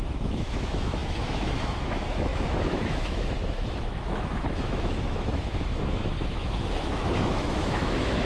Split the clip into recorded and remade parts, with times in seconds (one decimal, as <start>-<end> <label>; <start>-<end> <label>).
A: 0.0-8.3 remade